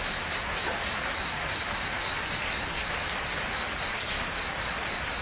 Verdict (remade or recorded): remade